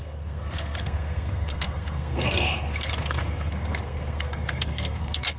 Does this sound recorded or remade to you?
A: remade